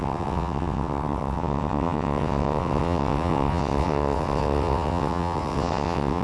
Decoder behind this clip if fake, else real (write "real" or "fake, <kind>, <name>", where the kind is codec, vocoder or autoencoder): fake, vocoder, WaveNeXt